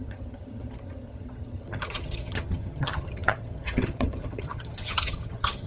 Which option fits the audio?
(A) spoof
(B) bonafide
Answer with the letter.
A